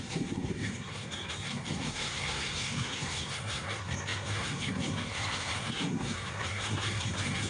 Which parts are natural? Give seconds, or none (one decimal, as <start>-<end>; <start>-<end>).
none